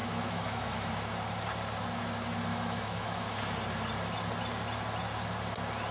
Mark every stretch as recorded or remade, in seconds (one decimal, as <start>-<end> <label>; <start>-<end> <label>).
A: 0.0-0.9 remade; 0.9-2.5 recorded; 2.5-3.4 remade; 3.4-5.9 recorded